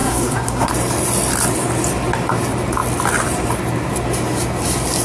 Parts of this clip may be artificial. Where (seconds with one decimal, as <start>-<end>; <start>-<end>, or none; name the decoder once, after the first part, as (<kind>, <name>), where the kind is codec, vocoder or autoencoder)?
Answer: 0.0-0.7 (codec, SNAC)